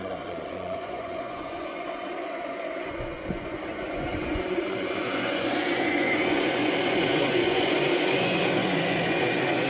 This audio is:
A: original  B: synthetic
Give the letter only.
B